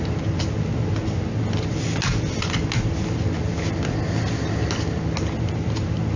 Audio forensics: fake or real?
real